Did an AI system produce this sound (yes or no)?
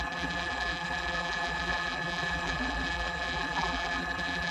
yes